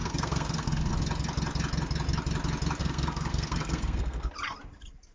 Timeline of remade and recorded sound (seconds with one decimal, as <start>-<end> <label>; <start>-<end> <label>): 0.0-0.9 remade; 0.9-2.8 recorded; 2.8-4.3 remade; 4.3-5.1 recorded